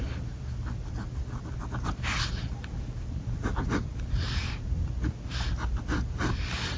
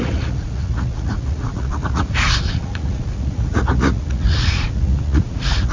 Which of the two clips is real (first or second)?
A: first